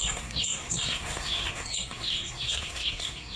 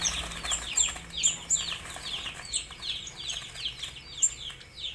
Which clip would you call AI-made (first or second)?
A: first